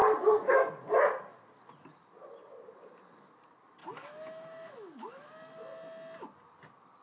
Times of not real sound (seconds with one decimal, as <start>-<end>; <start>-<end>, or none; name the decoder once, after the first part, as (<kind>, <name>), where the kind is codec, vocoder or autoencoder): 3.8-5.3 (autoencoder, DAC-VAE)